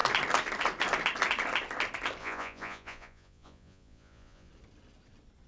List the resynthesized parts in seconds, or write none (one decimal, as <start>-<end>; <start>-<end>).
2.2-4.5